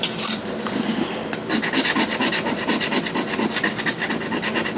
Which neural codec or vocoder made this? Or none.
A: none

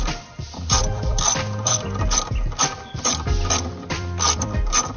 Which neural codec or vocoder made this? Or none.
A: vocoder, BigVGAN v2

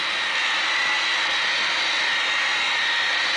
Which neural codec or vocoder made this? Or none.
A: none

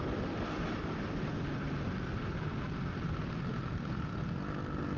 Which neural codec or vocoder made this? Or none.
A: none